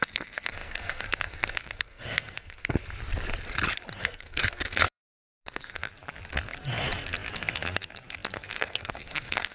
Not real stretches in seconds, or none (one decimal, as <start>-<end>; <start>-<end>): 0.0-2.8; 4.0-5.9; 8.4-9.5